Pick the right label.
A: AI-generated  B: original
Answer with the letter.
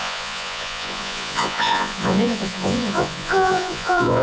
A